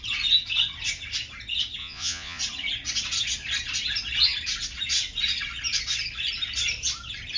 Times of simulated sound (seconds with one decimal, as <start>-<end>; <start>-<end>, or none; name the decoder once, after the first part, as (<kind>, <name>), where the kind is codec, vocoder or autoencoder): 1.8-2.4 (vocoder, Vocos)